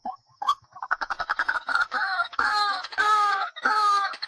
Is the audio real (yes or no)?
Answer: no